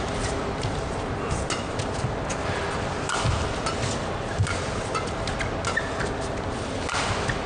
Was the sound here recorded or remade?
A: recorded